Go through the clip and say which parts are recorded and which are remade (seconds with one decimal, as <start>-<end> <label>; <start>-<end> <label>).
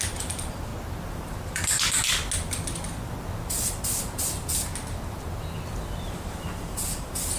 0.0-0.7 remade; 0.7-1.5 recorded; 1.5-2.0 remade; 2.0-6.0 recorded; 6.0-7.4 remade